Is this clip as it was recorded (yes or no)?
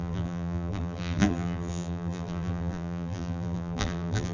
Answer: no